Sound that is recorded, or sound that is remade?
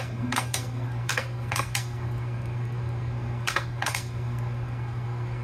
remade